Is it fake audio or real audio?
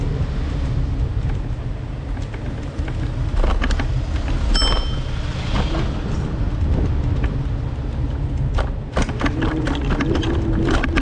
real